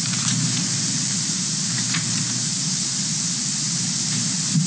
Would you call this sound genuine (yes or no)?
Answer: no